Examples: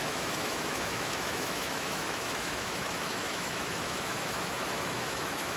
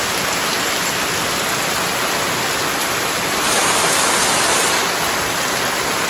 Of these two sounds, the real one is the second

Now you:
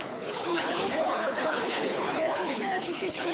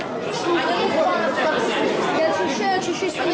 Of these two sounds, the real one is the second